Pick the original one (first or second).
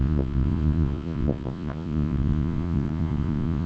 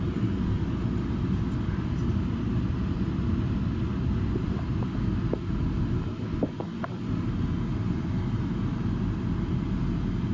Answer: second